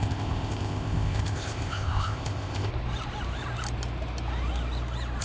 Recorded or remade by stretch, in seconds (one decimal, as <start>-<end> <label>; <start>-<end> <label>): 0.0-2.7 remade; 2.7-5.2 recorded